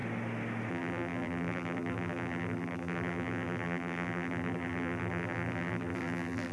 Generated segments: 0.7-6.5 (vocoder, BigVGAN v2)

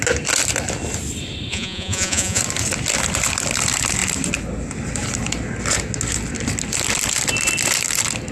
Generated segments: 1.5-2.4 (vocoder, Vocos)